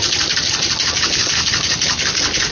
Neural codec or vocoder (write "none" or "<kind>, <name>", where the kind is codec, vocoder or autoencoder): none